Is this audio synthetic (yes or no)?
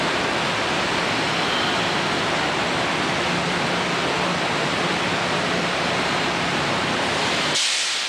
no